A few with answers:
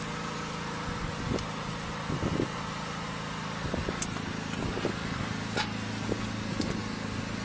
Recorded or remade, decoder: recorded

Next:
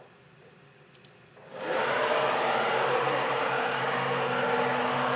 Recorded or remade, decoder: recorded